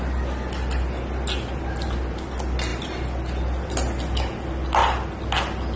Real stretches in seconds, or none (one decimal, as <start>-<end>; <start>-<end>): 0.0-5.8